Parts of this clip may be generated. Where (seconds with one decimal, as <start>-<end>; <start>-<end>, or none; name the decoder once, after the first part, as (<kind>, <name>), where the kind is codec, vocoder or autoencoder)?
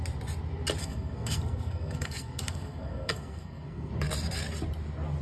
0.8-3.9 (codec, SNAC)